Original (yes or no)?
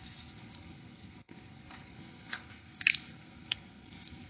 no